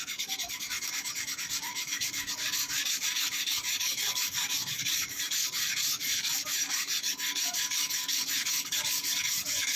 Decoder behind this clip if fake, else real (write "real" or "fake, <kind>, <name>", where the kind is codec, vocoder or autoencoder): fake, codec, DAC